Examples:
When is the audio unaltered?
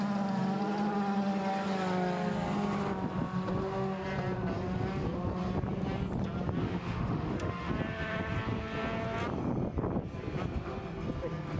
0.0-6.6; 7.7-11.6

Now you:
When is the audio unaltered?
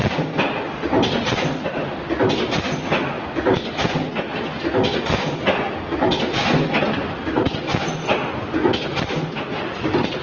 0.0-10.2